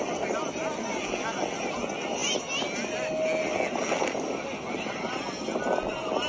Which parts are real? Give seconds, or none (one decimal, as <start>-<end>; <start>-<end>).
0.0-6.3